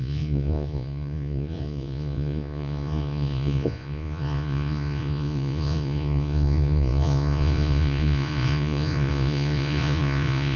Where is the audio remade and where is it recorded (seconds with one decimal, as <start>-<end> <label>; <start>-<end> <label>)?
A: 0.0-10.6 remade